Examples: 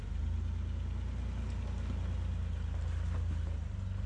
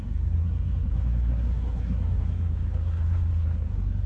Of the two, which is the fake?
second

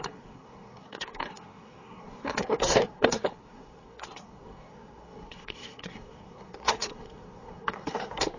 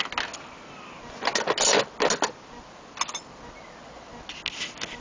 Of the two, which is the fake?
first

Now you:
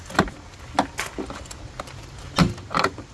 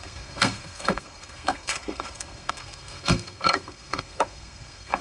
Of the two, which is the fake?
second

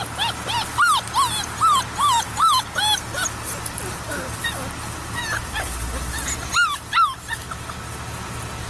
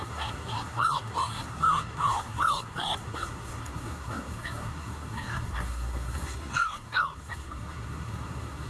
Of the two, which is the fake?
second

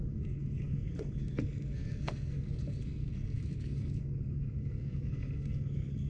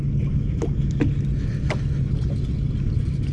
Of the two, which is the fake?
first